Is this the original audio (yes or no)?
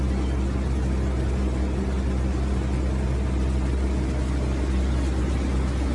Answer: yes